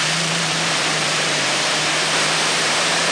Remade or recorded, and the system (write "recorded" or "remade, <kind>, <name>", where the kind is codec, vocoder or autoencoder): remade, vocoder, BigVGAN v2